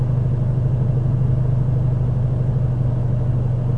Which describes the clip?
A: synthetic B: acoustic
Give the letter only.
B